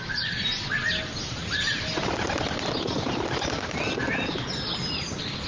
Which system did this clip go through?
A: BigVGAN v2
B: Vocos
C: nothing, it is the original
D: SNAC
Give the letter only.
C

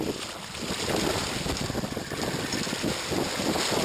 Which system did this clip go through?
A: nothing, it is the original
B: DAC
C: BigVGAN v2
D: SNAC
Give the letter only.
A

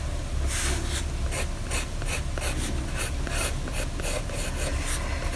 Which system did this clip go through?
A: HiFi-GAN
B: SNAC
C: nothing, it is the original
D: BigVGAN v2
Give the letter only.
C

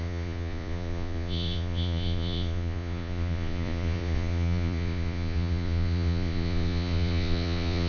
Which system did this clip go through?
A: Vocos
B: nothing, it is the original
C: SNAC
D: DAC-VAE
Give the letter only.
A